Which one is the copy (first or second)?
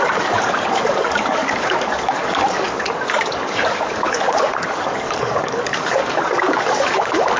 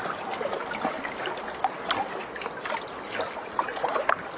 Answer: first